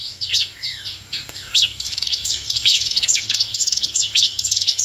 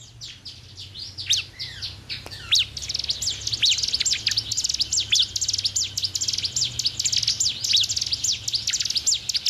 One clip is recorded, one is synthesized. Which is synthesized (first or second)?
first